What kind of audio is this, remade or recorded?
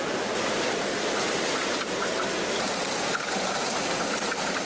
remade